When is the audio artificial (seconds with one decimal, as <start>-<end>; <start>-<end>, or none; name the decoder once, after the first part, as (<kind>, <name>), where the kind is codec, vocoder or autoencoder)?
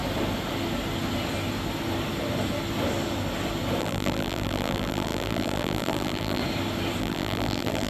3.8-6.4 (vocoder, BigVGAN v2); 7.0-7.9